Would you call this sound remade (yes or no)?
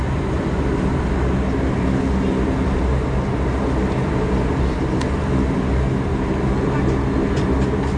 no